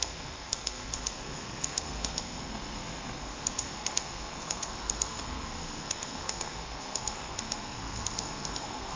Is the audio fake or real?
fake